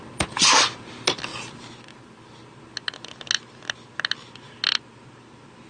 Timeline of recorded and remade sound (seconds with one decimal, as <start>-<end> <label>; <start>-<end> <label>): 0.0-5.7 recorded